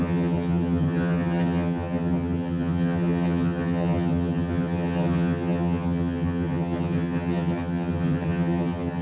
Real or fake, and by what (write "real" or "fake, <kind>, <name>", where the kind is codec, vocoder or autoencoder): fake, vocoder, HiFi-GAN